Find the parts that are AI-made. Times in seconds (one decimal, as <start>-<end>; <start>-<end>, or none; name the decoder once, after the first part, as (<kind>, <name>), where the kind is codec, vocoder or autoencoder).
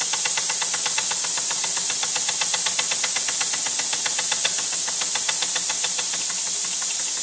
none